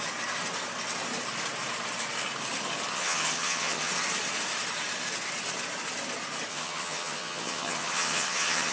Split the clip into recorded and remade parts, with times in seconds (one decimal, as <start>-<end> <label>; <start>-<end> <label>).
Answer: 0.0-2.9 recorded; 2.9-3.9 remade; 3.9-6.5 recorded; 6.5-8.7 remade